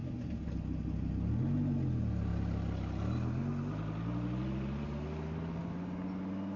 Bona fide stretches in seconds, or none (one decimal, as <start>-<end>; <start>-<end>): 0.0-6.6